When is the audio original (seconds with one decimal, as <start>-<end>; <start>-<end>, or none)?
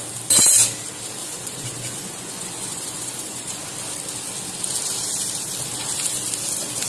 0.0-1.2; 3.6-6.9